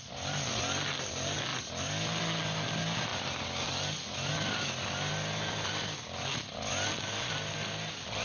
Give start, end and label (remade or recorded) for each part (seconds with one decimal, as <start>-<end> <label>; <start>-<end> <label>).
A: 0.0-8.2 recorded